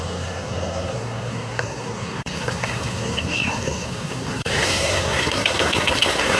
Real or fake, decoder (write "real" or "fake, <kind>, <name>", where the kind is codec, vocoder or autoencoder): fake, codec, SNAC